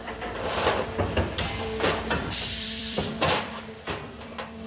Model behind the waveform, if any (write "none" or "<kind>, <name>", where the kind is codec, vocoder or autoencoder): vocoder, BigVGAN v2